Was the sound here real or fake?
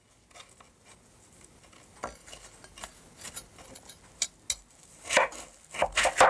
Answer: real